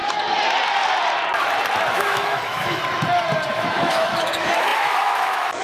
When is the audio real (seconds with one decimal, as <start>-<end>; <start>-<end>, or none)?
0.0-1.9; 2.8-3.5